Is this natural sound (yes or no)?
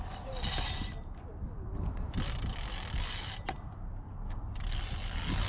no